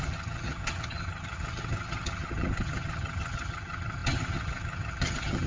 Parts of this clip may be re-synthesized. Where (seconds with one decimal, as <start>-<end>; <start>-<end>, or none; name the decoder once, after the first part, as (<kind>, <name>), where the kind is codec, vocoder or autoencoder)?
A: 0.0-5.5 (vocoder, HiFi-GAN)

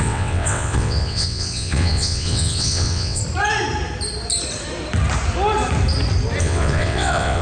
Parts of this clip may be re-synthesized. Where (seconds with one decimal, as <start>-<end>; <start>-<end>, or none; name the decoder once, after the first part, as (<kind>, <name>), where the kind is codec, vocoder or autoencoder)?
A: 0.0-3.2 (vocoder, WaveNeXt); 6.4-7.4

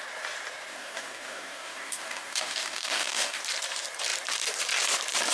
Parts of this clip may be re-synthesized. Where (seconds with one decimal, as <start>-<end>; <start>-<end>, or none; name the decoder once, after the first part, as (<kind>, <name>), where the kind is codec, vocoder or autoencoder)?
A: 0.7-3.4 (codec, DAC)